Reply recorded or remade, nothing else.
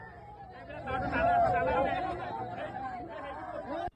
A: remade